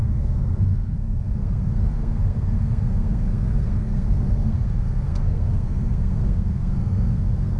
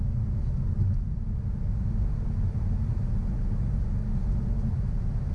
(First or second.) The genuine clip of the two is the second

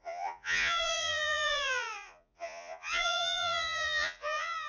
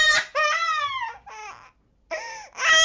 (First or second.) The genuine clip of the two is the second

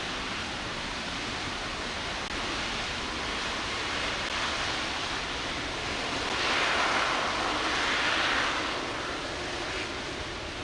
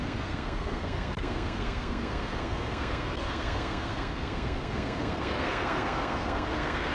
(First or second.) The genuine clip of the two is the first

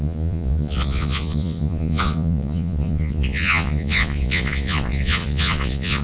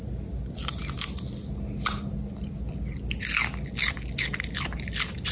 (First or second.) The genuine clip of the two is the second